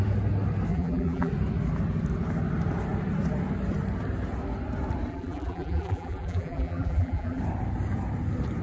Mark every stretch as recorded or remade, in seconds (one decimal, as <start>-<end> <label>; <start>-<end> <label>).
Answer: 0.0-0.7 recorded; 0.7-1.3 remade; 1.3-5.1 recorded; 5.1-7.4 remade; 7.4-8.6 recorded